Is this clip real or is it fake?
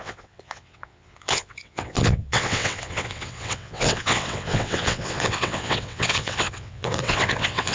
fake